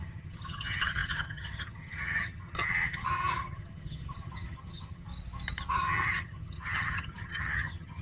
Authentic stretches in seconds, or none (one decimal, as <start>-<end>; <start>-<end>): 5.1-5.8